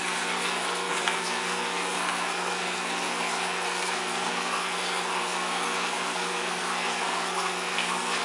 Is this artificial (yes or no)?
yes